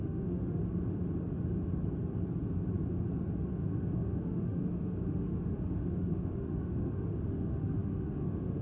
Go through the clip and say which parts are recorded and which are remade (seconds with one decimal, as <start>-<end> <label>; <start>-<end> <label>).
0.0-0.6 remade; 0.6-3.5 recorded; 3.5-8.6 remade